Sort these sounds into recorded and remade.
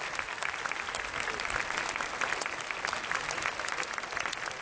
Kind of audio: recorded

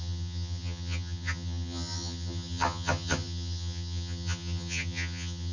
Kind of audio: remade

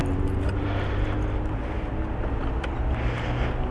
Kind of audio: recorded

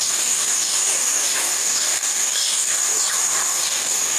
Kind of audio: remade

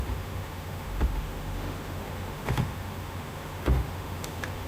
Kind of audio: remade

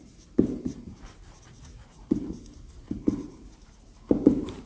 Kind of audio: remade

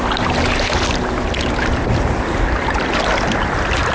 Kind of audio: recorded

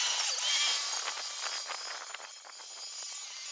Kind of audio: recorded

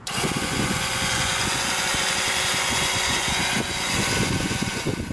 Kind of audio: remade